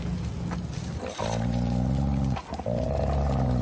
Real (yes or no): yes